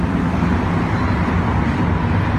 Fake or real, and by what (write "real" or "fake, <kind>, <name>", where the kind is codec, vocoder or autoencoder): real